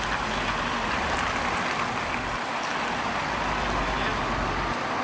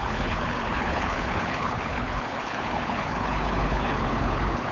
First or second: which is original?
first